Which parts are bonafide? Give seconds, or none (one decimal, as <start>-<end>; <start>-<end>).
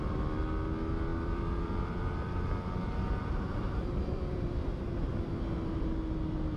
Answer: 0.0-1.1; 5.1-6.6